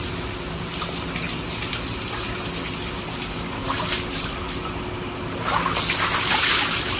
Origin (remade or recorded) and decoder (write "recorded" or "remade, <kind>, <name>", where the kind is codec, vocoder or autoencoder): recorded